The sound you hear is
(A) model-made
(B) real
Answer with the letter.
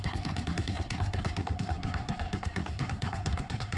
A